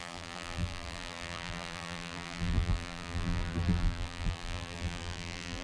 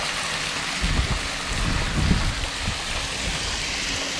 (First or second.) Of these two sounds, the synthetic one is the first